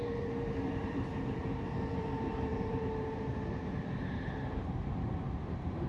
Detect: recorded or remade remade